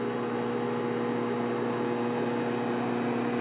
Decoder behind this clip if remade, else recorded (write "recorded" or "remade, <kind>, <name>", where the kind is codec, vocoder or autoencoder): recorded